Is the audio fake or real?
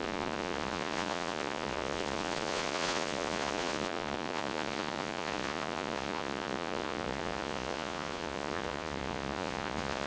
fake